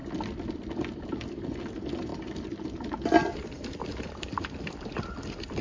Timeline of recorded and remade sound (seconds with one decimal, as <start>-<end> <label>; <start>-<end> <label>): 0.0-1.1 recorded; 1.1-5.6 remade